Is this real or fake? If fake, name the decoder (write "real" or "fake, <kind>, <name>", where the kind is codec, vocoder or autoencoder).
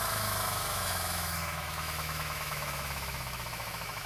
fake, autoencoder, DAC-VAE